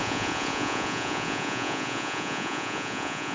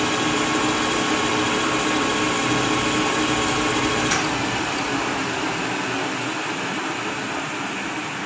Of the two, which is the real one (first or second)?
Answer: second